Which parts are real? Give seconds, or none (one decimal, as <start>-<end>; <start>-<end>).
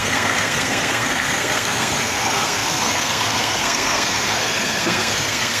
none